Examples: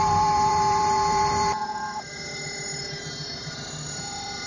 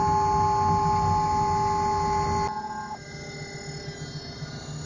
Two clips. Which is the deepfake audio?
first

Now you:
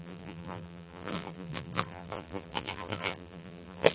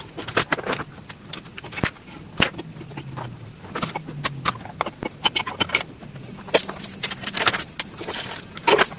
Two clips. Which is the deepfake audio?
first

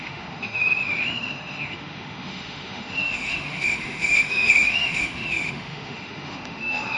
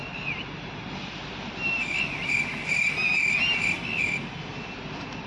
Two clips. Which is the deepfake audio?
first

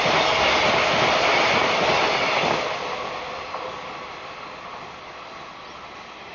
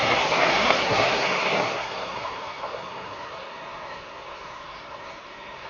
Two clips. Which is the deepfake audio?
second